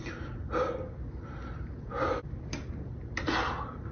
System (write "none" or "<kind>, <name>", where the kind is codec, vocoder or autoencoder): none